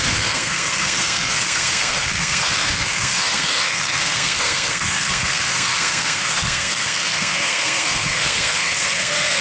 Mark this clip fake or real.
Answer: fake